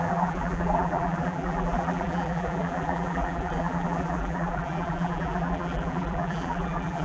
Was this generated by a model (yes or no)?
yes